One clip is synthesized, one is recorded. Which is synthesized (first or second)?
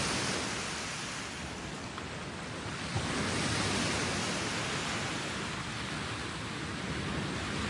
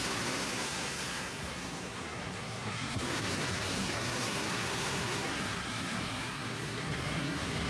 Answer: second